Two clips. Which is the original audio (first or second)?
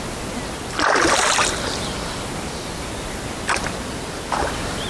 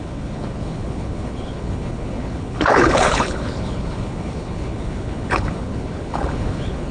first